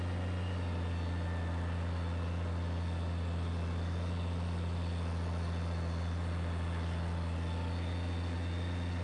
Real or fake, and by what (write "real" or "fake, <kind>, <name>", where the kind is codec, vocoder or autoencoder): real